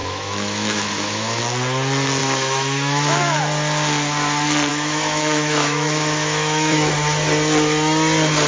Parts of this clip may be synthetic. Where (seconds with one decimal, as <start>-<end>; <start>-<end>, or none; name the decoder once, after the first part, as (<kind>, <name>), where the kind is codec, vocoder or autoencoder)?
0.0-1.4 (autoencoder, DAC-VAE); 2.2-3.4; 4.7-6.9